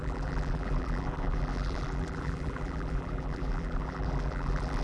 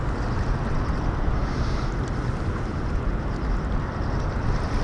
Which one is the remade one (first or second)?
first